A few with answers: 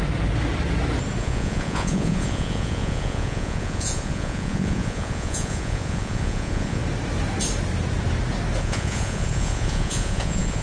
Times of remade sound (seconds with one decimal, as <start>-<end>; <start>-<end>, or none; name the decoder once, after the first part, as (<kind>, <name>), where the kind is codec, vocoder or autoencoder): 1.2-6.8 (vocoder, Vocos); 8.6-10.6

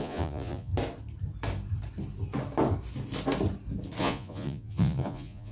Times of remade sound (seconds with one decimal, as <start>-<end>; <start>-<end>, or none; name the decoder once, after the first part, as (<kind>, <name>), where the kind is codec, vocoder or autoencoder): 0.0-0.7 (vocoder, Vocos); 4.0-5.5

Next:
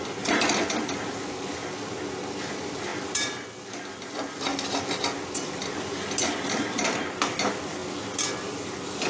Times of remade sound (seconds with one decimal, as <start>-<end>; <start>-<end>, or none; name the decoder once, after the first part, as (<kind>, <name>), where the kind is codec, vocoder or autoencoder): none